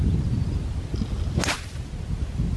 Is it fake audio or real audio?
real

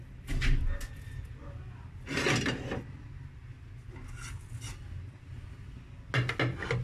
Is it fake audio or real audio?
real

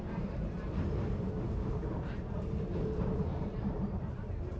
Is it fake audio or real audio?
fake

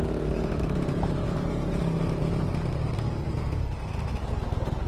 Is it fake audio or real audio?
fake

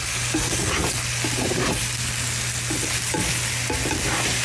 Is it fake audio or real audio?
real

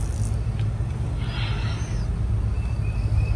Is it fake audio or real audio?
real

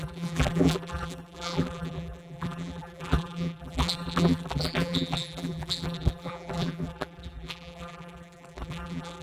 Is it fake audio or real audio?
fake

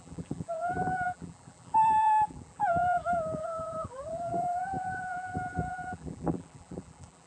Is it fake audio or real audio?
fake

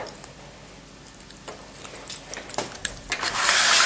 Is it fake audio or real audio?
real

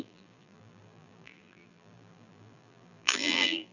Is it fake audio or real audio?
fake